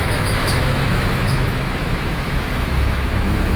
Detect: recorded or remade remade